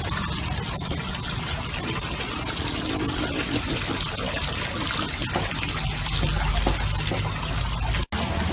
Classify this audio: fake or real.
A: real